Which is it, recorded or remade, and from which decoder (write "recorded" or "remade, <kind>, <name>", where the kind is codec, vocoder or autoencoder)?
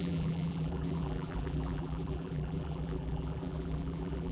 remade, vocoder, BigVGAN v2